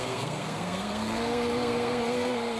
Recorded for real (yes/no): no